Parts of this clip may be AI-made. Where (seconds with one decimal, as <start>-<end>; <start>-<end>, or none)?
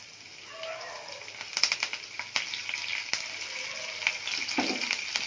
none